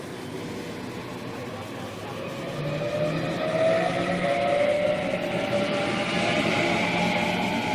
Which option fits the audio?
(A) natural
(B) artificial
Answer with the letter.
A